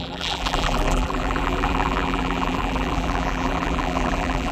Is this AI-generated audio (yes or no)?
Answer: yes